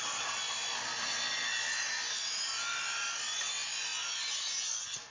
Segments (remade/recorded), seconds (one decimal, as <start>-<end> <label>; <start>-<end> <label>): 0.0-5.1 recorded